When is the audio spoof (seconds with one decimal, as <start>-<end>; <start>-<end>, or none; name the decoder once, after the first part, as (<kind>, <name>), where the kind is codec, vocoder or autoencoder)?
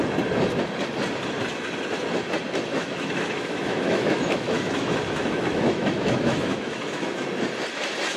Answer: 2.7-7.3 (autoencoder, DAC-VAE)